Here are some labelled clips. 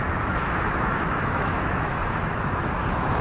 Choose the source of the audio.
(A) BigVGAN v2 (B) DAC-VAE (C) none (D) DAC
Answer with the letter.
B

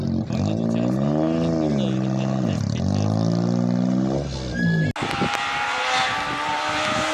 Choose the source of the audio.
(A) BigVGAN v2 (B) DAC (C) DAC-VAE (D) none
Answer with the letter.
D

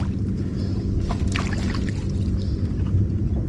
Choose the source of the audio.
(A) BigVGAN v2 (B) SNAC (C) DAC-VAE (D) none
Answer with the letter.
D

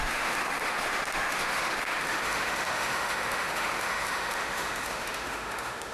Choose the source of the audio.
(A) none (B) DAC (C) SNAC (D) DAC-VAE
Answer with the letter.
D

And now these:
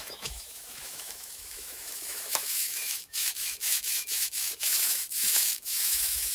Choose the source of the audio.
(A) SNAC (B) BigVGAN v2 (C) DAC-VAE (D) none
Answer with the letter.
C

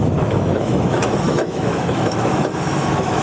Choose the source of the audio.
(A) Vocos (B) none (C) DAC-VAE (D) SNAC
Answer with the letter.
C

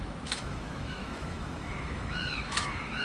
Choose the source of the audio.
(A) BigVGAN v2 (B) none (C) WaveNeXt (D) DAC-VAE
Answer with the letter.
D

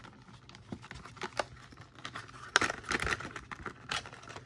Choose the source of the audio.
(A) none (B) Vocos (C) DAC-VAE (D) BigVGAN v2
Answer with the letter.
A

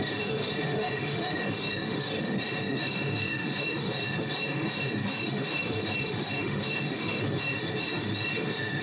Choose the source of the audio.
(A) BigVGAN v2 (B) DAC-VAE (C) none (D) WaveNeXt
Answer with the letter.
B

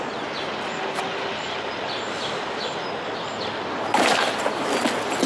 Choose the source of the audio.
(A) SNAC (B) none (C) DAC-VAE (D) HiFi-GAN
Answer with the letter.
B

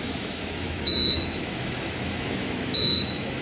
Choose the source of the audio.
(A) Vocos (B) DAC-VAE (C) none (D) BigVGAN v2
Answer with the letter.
B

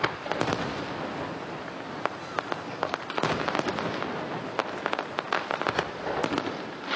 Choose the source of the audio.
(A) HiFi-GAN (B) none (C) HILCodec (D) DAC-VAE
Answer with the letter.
B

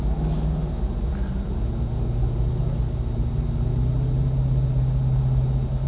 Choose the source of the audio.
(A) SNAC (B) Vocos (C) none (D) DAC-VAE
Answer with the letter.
C